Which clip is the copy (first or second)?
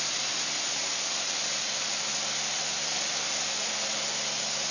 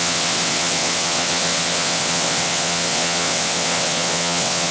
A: second